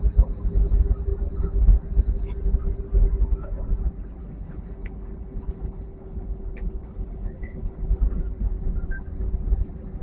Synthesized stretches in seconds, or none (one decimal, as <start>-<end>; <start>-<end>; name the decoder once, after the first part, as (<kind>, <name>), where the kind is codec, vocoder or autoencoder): 4.2-8.0 (codec, HILCodec)

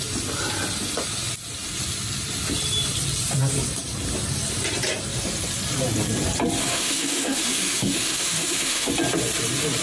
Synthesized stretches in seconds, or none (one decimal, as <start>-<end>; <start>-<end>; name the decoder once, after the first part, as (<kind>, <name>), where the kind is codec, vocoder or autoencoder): 6.6-8.9 (autoencoder, DAC-VAE)

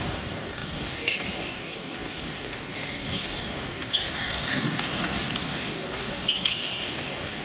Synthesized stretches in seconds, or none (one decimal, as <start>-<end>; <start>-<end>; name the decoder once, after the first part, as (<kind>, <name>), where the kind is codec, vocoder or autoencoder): 0.0-7.4 (codec, DAC)

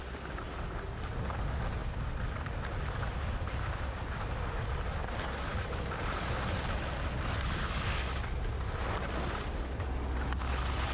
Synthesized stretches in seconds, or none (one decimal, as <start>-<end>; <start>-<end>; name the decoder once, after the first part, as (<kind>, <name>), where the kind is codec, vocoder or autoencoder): none